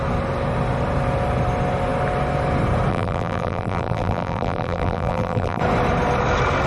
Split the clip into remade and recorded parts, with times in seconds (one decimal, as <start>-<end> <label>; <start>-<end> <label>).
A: 0.0-2.9 recorded; 2.9-5.6 remade; 5.6-6.7 recorded